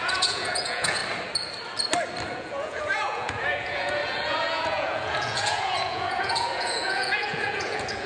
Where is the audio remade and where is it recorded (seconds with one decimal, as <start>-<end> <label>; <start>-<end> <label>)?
0.0-1.0 remade; 1.0-2.3 recorded; 2.3-8.1 remade